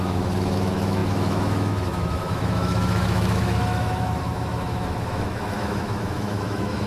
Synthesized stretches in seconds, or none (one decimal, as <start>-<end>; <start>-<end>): 0.0-6.9